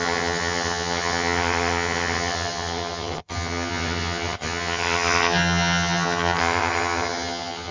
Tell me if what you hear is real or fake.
fake